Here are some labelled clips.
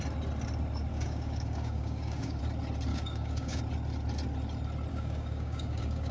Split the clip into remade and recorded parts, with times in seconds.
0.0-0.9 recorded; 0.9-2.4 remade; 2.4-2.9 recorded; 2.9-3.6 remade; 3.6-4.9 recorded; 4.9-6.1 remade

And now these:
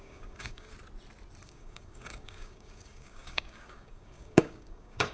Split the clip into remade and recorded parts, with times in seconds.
0.0-0.7 remade; 0.7-1.4 recorded; 1.4-5.1 remade

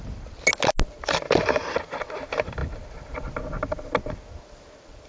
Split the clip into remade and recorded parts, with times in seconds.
0.0-5.1 recorded

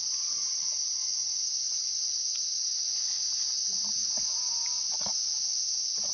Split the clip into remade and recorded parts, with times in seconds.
0.0-6.1 recorded

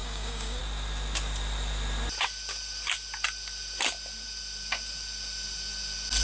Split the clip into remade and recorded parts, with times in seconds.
0.0-0.6 remade; 0.6-6.2 recorded

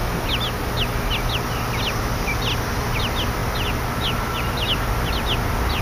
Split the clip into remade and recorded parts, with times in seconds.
0.0-5.8 recorded

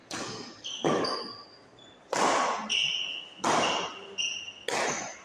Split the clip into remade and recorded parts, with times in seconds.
0.0-1.2 remade; 1.2-5.2 recorded

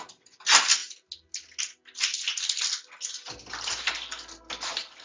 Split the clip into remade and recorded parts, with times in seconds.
0.0-5.0 recorded